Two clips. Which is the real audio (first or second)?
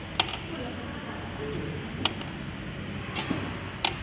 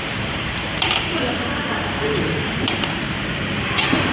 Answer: first